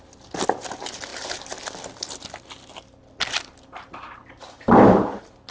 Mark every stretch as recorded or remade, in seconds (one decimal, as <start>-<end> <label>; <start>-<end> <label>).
0.0-5.5 recorded